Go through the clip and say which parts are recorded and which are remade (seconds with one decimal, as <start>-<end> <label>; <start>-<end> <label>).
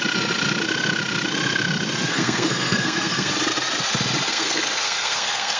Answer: 0.0-2.1 recorded; 2.1-3.3 remade; 3.3-4.3 recorded; 4.3-5.6 remade